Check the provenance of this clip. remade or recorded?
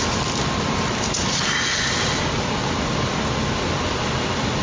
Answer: recorded